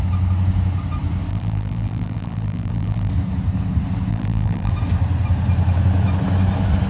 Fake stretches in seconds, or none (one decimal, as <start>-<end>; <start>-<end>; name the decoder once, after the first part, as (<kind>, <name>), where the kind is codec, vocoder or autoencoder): 1.3-3.1 (vocoder, BigVGAN v2); 4.1-4.7